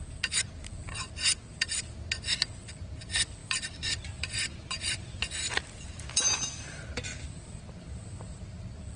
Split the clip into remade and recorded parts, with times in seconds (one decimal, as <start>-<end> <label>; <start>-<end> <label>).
0.0-1.3 recorded; 1.3-1.8 remade; 1.8-3.4 recorded; 3.4-8.5 remade; 8.5-9.0 recorded